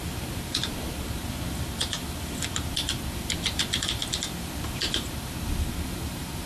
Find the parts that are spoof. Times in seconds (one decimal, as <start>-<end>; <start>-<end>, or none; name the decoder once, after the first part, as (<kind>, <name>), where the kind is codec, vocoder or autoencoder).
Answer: 0.0-1.2 (vocoder, BigVGAN v2); 1.7-4.0; 4.6-6.5